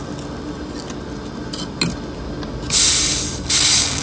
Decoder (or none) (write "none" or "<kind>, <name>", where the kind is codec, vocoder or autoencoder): none